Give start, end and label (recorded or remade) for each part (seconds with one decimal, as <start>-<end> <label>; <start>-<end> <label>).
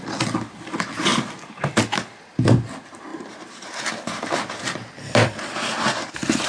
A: 0.0-3.1 recorded; 3.1-6.5 remade